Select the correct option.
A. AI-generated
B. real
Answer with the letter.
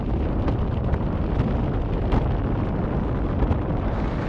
B